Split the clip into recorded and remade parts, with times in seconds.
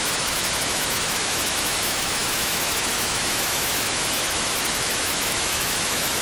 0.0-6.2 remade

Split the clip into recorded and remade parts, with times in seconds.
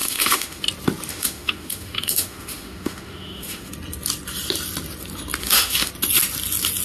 0.0-0.6 remade; 0.6-1.1 recorded; 1.1-3.7 remade; 3.7-5.4 recorded; 5.4-5.9 remade; 5.9-6.8 recorded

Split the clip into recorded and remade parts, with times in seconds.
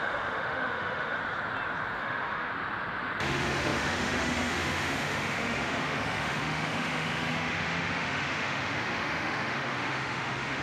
0.0-1.2 remade; 1.2-2.0 recorded; 2.0-2.5 remade; 2.5-3.2 recorded; 3.2-10.6 remade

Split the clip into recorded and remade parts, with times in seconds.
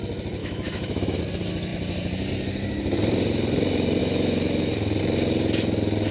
0.0-0.4 recorded; 0.4-1.2 remade; 1.2-4.0 recorded; 4.0-5.0 remade; 5.0-6.1 recorded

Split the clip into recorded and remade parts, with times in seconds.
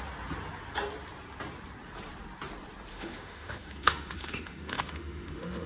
0.0-2.9 recorded; 2.9-5.7 remade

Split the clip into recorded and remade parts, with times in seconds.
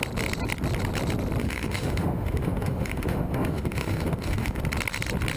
0.0-1.4 recorded; 1.4-4.6 remade; 4.6-5.4 recorded